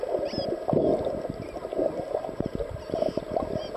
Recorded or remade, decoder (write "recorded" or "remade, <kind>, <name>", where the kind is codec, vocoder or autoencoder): recorded